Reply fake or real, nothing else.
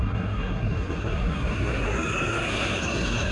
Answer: fake